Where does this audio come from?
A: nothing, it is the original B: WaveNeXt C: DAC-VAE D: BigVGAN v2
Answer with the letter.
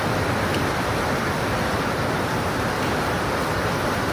D